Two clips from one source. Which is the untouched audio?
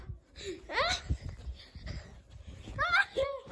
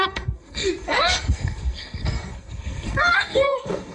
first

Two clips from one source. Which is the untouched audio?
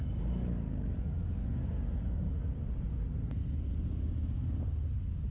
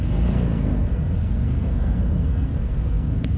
first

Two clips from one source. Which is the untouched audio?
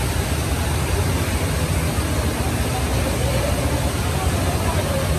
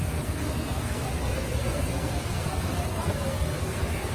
first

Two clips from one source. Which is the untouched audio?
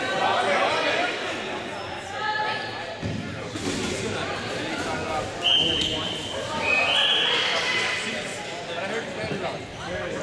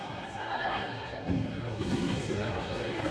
first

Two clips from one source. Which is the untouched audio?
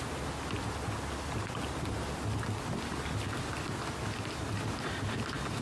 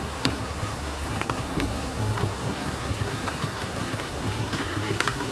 first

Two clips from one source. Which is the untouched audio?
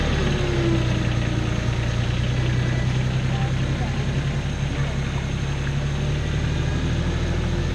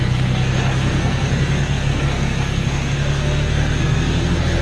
first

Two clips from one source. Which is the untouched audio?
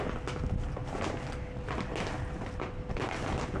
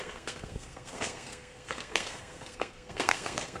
first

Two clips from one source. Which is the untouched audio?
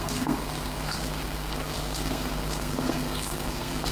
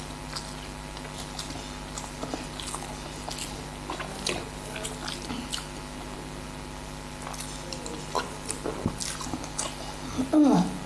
second